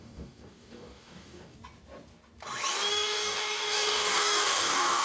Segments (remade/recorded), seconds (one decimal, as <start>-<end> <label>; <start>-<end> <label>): 0.0-1.6 remade; 1.6-2.9 recorded; 2.9-5.0 remade